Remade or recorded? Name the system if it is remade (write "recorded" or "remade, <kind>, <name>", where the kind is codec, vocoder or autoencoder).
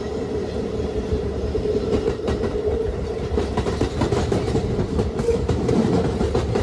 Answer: remade, vocoder, BigVGAN v2